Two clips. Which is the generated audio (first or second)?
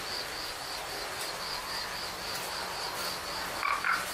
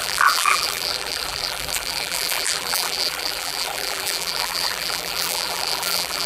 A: second